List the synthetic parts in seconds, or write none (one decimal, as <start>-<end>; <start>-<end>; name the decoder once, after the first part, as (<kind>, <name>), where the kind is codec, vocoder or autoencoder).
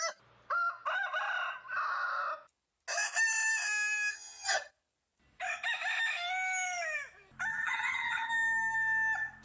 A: 4.1-4.7 (vocoder, HiFi-GAN); 7.5-8.3